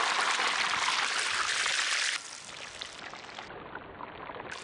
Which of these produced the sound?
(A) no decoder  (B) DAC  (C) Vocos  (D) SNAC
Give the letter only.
A